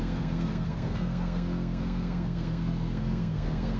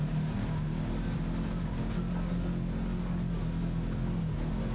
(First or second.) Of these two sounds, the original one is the second